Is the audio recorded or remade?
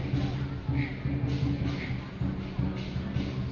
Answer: recorded